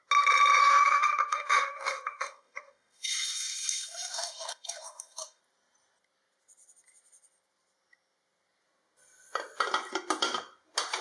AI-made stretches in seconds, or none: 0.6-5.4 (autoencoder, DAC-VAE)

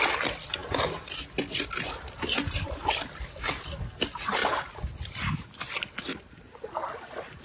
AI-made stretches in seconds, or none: none

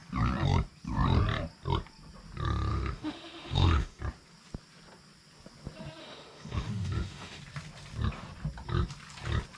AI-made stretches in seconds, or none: 2.7-4.0 (autoencoder, DAC-VAE); 6.0-7.4